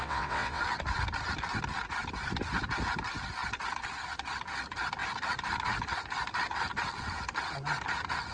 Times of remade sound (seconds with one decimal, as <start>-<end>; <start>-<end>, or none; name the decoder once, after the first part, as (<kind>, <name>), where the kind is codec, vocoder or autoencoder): 0.0-0.6 (vocoder, WaveNeXt)